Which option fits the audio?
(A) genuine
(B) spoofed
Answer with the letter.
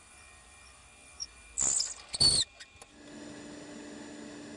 A